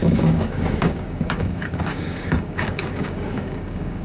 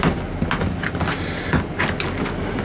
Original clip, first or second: second